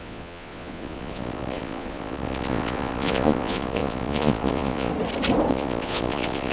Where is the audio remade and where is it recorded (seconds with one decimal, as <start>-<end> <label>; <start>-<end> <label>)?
0.0-4.9 remade; 4.9-5.5 recorded; 5.5-6.5 remade